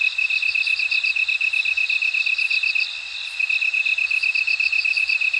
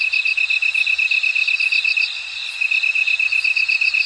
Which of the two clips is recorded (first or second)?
second